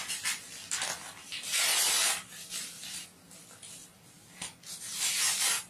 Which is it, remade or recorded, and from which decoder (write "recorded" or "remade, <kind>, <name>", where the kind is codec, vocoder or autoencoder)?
recorded